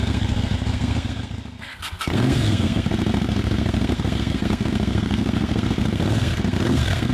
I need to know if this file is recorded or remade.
remade